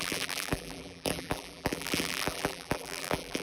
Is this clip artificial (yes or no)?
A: yes